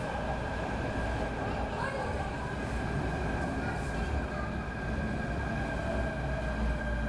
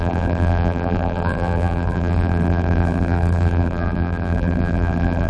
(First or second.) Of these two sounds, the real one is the first